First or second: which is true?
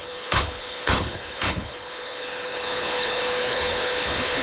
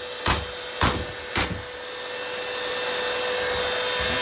second